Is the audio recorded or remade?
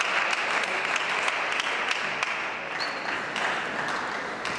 recorded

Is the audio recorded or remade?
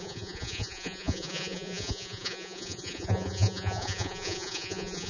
remade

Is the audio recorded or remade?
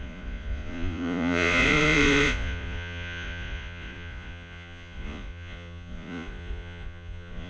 remade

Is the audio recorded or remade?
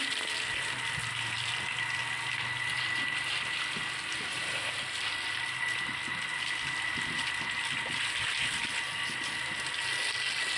recorded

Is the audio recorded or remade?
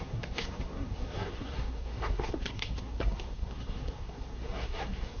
remade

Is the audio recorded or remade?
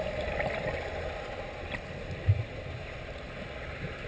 recorded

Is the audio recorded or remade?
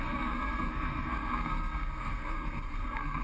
remade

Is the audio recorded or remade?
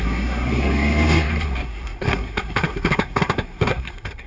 remade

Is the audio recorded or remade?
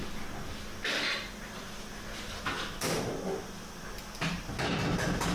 recorded